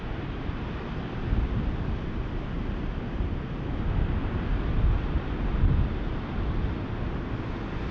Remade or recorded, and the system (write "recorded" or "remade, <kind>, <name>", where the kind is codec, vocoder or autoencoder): recorded